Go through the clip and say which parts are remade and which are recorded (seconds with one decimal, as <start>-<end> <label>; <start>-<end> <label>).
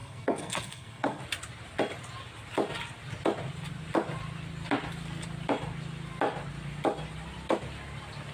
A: 0.0-1.2 remade; 1.2-8.3 recorded